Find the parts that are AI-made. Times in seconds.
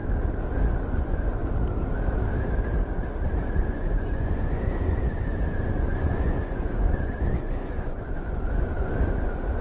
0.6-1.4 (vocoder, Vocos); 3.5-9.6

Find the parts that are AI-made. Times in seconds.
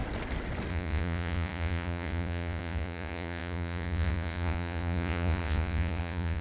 0.7-6.4 (vocoder, Vocos)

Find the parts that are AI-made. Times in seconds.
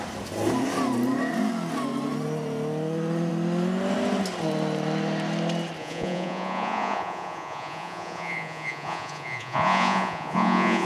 5.8-10.9 (vocoder, Vocos)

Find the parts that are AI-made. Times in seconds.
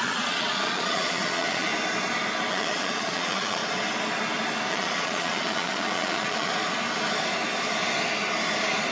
0.0-1.7 (vocoder, Vocos); 2.5-3.6; 4.7-6.5